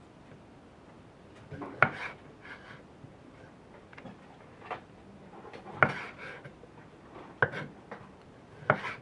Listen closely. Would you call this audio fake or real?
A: real